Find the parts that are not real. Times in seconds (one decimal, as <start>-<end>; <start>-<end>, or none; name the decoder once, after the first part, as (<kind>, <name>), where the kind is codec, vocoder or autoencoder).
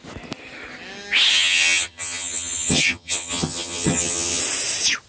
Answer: 1.3-4.4 (vocoder, HiFi-GAN)